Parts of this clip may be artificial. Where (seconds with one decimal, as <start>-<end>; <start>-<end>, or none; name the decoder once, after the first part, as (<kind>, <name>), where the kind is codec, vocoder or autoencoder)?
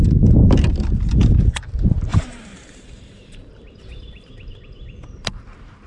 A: 2.1-5.9 (vocoder, BigVGAN v2)